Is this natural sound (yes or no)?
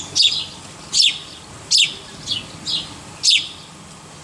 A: yes